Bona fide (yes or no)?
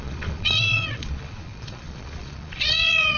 no